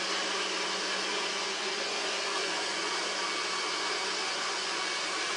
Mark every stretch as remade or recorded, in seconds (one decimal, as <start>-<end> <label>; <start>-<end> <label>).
0.0-1.1 recorded; 1.1-3.0 remade; 3.0-4.2 recorded; 4.2-4.9 remade; 4.9-5.4 recorded